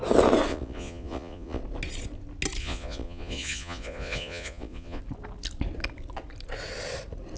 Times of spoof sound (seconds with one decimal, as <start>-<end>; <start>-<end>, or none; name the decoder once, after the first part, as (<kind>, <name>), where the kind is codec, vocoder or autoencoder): 0.5-1.6 (vocoder, Vocos); 2.6-5.0